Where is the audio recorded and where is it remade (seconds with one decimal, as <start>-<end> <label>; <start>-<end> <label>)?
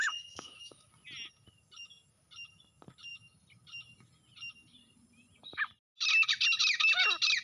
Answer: 0.0-0.9 remade; 0.9-7.4 recorded